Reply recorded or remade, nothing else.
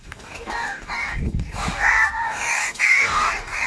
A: remade